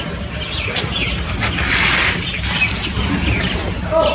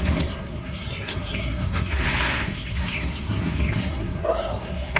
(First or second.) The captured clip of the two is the first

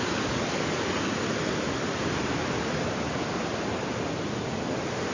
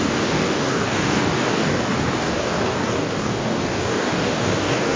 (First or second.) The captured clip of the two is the first